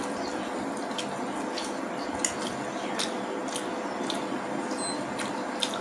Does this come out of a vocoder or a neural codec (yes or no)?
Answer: no